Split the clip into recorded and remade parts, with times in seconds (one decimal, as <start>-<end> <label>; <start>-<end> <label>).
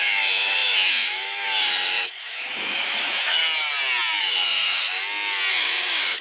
0.0-3.4 remade; 3.4-4.2 recorded; 4.2-5.0 remade; 5.0-5.5 recorded; 5.5-6.2 remade